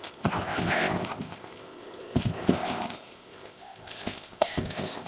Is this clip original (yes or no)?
no